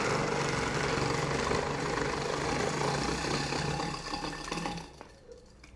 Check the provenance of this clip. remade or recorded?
recorded